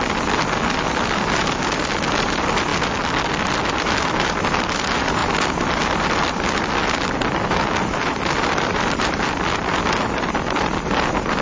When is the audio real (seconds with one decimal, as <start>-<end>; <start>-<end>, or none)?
0.0-1.8; 2.7-4.1; 5.2-8.1